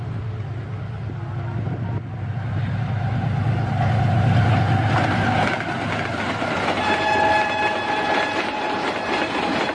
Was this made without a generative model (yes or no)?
yes